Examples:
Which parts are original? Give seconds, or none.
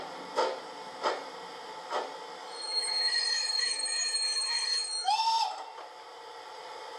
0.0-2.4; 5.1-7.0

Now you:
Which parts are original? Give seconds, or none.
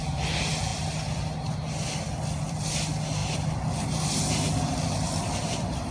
0.0-5.9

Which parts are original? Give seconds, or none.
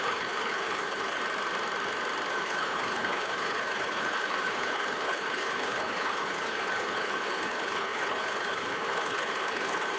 1.2-2.3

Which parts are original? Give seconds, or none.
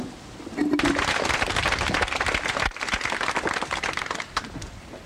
0.0-5.1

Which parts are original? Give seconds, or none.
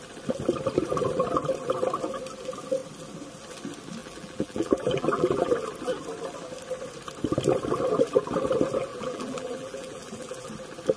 0.0-4.0; 5.5-8.9; 10.5-11.0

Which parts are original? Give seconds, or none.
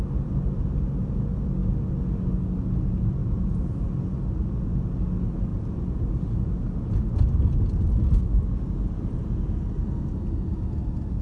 0.0-11.2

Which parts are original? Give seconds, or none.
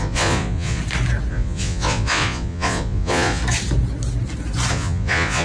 0.8-1.3; 3.4-4.7